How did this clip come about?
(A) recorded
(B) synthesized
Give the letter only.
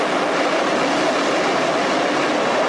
A